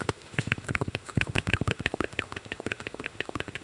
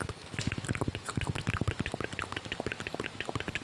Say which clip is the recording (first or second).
second